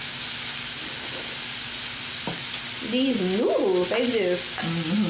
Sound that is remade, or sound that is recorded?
recorded